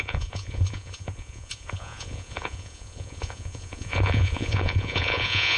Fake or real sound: fake